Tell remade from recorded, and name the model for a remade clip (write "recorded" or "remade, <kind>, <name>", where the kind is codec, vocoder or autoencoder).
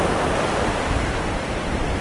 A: recorded